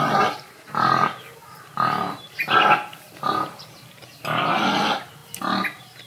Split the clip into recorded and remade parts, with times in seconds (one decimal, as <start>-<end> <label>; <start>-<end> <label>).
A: 0.0-6.1 recorded